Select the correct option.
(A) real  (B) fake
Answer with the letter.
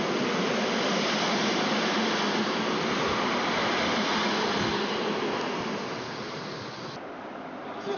A